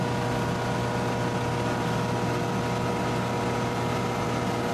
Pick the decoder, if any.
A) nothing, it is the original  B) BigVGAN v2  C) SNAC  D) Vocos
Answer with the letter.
A